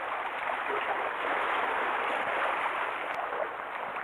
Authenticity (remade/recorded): recorded